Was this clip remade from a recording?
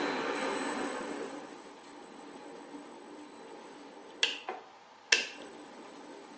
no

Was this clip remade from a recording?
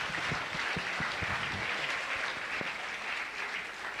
no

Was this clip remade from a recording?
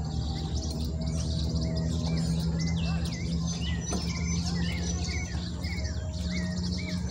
no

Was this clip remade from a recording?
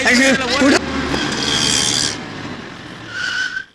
no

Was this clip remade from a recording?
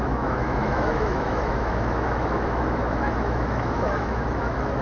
yes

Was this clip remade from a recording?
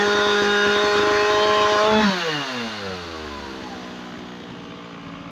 no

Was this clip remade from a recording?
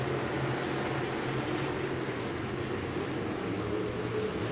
no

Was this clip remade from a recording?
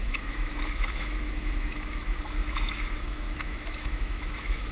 yes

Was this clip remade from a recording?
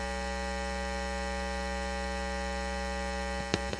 no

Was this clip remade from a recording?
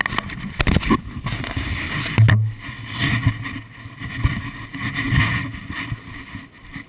no